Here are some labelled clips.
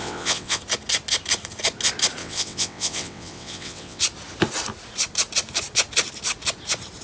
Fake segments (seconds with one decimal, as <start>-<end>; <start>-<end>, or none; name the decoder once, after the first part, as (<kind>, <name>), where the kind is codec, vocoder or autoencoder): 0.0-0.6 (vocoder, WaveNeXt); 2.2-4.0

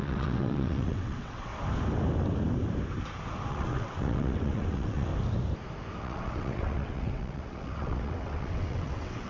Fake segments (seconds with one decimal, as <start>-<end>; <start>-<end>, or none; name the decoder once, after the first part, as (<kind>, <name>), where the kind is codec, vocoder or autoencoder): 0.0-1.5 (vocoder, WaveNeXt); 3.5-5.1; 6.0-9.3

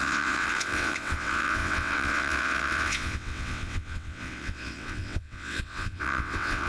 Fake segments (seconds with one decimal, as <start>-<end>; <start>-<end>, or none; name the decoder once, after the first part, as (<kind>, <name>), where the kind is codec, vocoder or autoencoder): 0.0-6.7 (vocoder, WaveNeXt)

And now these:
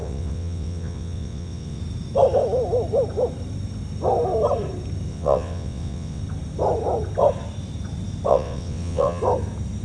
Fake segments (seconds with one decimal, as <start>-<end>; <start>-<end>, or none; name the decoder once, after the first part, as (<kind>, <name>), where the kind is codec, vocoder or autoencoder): 0.0-1.8 (vocoder, WaveNeXt); 5.1-6.2; 8.3-9.2

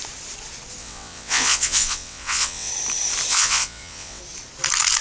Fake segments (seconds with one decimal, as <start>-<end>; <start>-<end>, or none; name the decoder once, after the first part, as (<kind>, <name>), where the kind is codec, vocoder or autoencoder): 0.8-2.7 (vocoder, WaveNeXt); 3.3-4.2

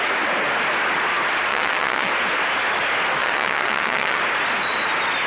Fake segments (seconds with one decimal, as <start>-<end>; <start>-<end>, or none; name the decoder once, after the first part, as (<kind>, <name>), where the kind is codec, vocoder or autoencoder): 1.5-2.1 (vocoder, WaveNeXt); 3.2-4.2